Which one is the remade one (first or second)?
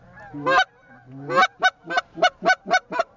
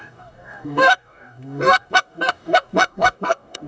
second